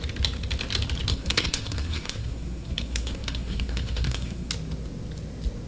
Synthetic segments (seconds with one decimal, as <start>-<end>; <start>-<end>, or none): 1.1-4.5